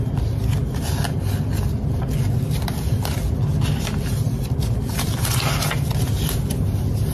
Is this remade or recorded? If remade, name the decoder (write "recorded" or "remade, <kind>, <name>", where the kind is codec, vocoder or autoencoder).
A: recorded